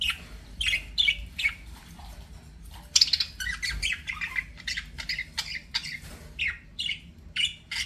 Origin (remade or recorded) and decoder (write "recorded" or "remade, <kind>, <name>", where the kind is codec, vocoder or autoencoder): recorded